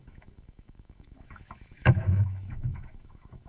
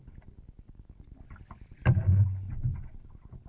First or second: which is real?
second